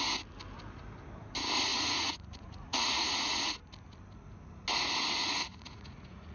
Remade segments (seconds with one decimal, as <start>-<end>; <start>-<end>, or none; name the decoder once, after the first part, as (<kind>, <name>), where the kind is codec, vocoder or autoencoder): 1.7-3.6 (vocoder, Vocos); 5.2-6.3